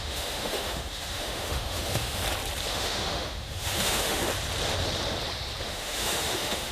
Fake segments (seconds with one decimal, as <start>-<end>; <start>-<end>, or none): 0.0-2.2; 2.7-4.2; 5.6-6.7